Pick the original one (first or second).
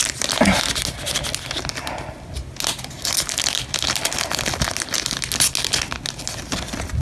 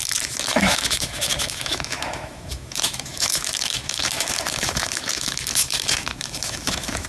first